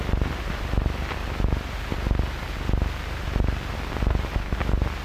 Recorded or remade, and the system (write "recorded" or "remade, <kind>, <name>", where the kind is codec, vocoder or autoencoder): recorded